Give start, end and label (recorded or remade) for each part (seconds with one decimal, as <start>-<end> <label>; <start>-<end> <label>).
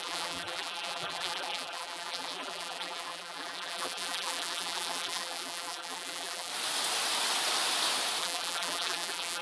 0.0-6.5 remade; 6.5-8.2 recorded; 8.2-9.4 remade